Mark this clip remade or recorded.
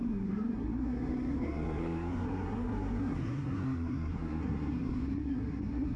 remade